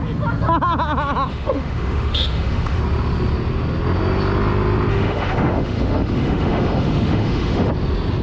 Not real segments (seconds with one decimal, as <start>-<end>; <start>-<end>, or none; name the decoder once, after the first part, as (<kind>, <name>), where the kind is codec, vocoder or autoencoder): 1.3-2.8 (autoencoder, DAC-VAE); 4.9-7.7